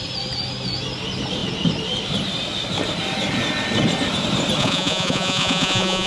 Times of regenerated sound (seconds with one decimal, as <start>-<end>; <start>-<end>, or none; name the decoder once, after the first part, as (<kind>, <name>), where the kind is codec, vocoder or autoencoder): 4.6-6.1 (vocoder, Vocos)